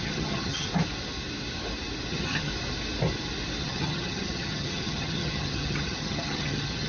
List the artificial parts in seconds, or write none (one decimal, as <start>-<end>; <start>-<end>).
0.0-0.7; 2.1-2.5; 3.6-6.9